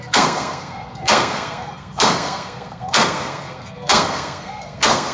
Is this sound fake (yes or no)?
yes